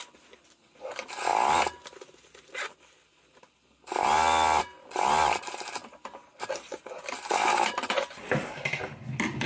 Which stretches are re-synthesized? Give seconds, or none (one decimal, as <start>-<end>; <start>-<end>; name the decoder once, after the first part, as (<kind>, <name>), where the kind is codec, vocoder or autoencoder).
none